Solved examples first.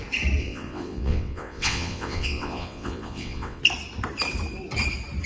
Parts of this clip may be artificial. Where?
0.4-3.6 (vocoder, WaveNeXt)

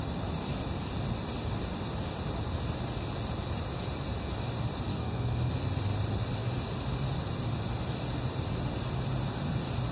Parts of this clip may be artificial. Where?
4.9-5.5 (codec, SNAC)

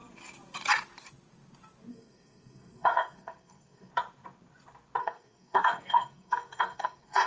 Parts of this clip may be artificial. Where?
1.9-3.9 (codec, SNAC); 5.0-7.3

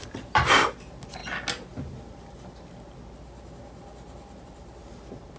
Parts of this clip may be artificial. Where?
none

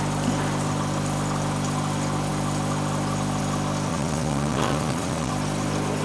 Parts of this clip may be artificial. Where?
3.9-5.3 (vocoder, Vocos)

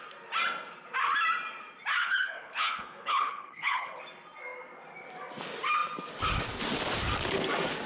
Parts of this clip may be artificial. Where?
2.0-4.0 (codec, HILCodec)